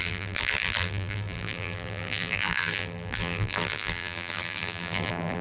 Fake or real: fake